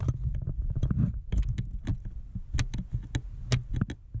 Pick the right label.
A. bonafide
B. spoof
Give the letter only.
A